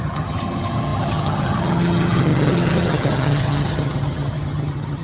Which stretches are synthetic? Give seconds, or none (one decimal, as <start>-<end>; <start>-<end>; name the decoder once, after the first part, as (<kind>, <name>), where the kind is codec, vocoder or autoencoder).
0.0-5.0 (vocoder, HiFi-GAN)

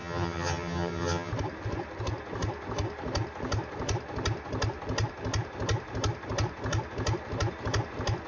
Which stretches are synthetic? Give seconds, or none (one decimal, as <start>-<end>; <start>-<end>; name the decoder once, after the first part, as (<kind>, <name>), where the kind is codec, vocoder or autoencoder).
0.0-1.3 (vocoder, HiFi-GAN)

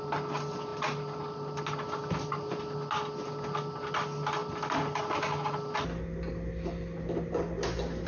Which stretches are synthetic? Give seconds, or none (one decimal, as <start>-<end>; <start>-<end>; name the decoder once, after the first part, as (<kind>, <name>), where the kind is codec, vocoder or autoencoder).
none

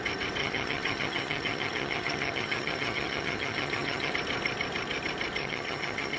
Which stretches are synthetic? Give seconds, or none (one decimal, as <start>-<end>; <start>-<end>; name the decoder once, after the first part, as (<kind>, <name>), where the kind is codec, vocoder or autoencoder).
0.4-4.1 (vocoder, HiFi-GAN); 5.4-6.2

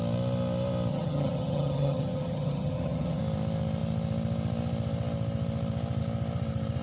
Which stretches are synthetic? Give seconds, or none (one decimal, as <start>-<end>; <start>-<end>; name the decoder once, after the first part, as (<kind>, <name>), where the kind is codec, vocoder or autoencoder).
0.9-3.2 (vocoder, HiFi-GAN)

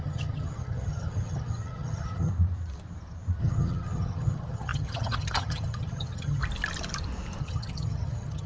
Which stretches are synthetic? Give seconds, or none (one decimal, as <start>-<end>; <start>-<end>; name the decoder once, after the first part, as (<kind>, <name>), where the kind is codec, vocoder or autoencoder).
0.0-2.3 (vocoder, HiFi-GAN); 3.4-6.4; 7.4-8.5

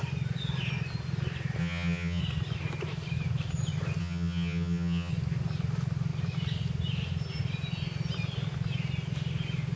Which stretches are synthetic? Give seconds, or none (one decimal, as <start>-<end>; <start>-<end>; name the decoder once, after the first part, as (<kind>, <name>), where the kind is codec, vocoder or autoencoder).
1.6-2.2 (vocoder, HiFi-GAN); 4.0-5.1

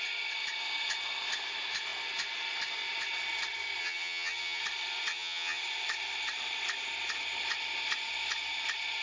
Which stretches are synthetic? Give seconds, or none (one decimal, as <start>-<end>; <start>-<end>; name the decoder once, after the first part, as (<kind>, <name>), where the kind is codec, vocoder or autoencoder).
3.8-4.6 (vocoder, HiFi-GAN); 5.1-5.6